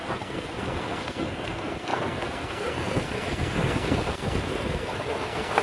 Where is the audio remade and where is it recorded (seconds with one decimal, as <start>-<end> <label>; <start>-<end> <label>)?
0.0-5.6 remade